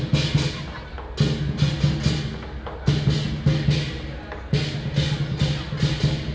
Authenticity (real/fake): real